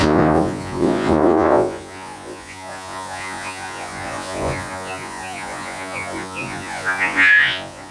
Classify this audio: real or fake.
fake